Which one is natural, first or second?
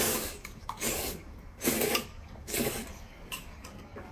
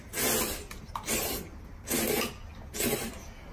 second